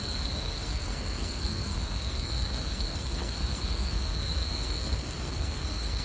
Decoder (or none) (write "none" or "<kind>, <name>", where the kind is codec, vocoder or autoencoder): codec, SNAC